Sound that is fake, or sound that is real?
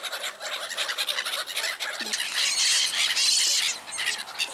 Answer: real